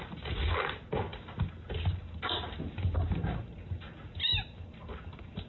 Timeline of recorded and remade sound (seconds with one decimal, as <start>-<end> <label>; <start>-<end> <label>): 0.0-5.5 recorded